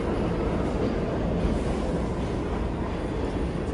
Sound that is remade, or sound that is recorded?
recorded